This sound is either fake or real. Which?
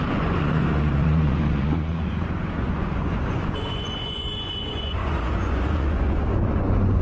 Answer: fake